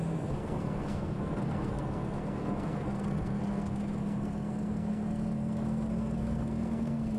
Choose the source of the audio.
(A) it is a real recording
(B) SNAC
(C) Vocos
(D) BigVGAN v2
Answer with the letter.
B